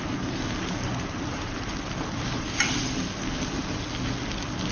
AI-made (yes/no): no